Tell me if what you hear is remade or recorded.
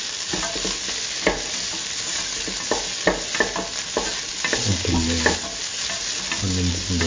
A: recorded